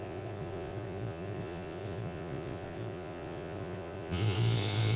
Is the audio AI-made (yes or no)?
yes